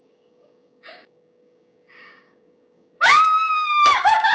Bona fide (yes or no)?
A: no